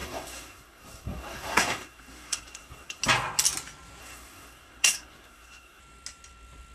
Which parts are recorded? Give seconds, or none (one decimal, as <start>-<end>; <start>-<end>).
3.0-4.0; 5.8-6.7

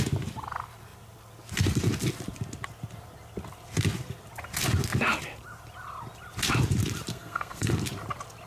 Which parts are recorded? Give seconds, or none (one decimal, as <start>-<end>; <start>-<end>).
0.0-7.1; 7.7-8.5